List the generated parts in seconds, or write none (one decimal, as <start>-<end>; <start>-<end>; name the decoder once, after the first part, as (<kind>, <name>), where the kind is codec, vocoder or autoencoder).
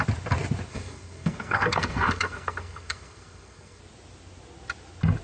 0.7-3.8 (codec, SNAC)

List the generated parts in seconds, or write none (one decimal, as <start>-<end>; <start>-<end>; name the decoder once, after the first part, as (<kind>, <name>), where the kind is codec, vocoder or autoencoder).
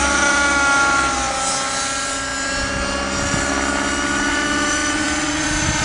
4.8-5.8 (vocoder, BigVGAN v2)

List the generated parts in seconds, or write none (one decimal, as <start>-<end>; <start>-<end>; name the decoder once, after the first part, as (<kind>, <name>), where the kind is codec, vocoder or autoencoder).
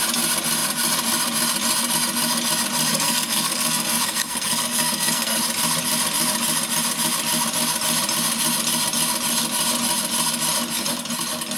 2.9-5.4 (codec, SNAC)